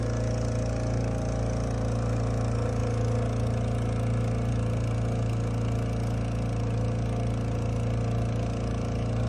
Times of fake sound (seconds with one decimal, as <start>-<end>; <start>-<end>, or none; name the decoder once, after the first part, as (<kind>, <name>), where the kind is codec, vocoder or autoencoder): none